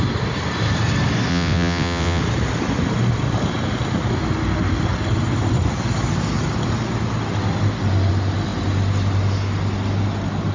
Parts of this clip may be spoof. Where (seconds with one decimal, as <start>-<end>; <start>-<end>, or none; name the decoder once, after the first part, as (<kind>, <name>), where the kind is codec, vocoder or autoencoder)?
1.3-2.2 (vocoder, WaveNeXt)